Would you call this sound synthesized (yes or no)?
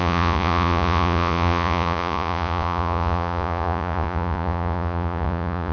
yes